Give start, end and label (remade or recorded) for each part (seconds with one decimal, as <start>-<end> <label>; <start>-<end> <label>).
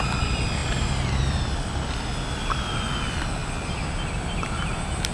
0.0-5.1 recorded